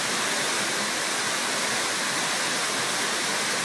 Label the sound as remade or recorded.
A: recorded